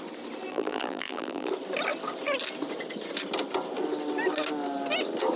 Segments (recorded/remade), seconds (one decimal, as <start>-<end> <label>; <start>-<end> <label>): 0.0-0.5 recorded; 0.5-1.5 remade; 1.5-5.4 recorded